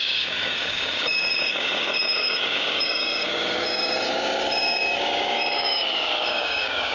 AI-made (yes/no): yes